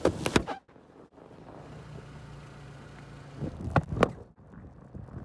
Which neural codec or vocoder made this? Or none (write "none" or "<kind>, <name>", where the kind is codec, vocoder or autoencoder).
none